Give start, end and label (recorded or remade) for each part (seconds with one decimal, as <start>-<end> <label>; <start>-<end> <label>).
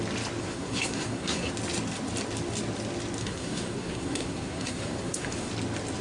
0.0-0.4 recorded; 0.4-1.5 remade; 1.5-3.2 recorded; 3.2-5.5 remade; 5.5-6.0 recorded